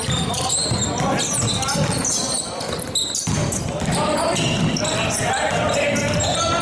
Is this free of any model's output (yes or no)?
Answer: yes